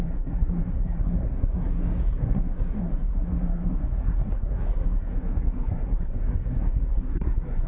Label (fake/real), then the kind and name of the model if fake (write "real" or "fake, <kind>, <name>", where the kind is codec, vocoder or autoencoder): fake, codec, SNAC